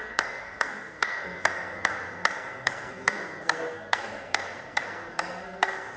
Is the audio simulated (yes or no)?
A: yes